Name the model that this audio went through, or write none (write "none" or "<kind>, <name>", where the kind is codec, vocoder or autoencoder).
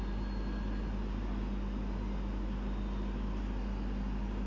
none